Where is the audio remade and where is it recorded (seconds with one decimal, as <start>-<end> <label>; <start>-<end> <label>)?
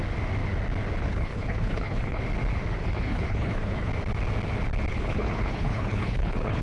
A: 0.0-1.0 recorded; 1.0-2.2 remade; 2.2-2.8 recorded; 2.8-3.9 remade; 3.9-4.9 recorded; 4.9-6.6 remade